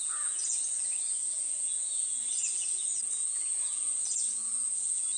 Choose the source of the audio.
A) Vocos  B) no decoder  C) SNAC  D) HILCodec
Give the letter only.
A